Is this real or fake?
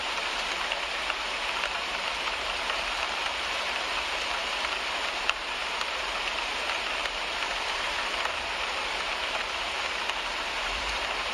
fake